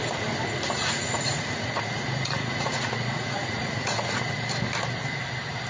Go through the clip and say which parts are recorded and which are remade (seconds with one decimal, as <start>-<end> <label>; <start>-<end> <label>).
0.0-0.8 recorded; 0.8-4.2 remade; 4.2-5.7 recorded